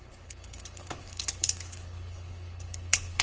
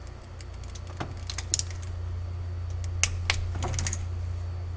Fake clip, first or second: first